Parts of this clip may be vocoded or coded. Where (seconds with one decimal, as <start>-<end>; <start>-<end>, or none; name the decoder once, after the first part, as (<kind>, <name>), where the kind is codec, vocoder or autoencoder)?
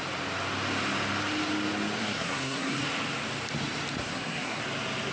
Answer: 2.0-2.8 (codec, SNAC); 4.0-4.6